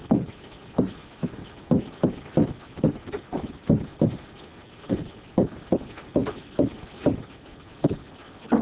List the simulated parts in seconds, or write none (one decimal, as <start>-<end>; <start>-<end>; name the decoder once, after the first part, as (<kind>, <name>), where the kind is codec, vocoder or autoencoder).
none